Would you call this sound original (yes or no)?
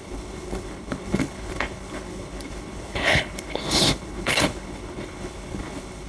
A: no